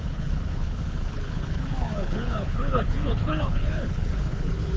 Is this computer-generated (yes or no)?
yes